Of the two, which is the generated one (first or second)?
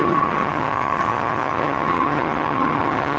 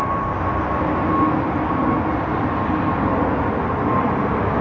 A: first